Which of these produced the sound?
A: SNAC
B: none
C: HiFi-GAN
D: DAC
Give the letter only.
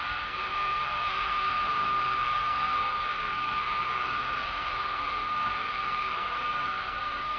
A